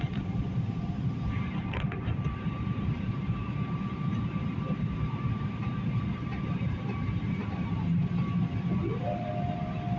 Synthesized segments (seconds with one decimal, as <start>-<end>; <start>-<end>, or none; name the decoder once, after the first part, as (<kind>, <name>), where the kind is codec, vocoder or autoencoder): 0.0-8.0 (vocoder, BigVGAN v2)